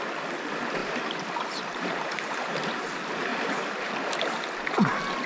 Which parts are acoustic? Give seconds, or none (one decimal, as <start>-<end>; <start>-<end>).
0.0-0.8; 2.8-5.3